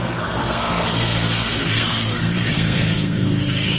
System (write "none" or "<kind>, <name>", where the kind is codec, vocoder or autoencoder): codec, SNAC